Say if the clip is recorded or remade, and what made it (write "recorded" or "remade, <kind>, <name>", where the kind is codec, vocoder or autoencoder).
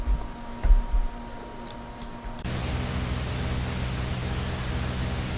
recorded